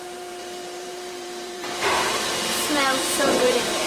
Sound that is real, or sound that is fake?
fake